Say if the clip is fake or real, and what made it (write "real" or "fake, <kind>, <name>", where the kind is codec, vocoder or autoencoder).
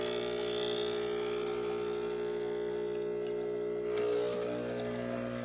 real